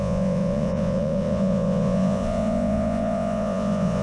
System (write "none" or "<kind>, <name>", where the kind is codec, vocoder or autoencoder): vocoder, Vocos